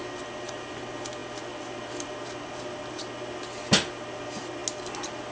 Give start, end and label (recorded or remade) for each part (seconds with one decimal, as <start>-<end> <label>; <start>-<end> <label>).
0.0-5.3 recorded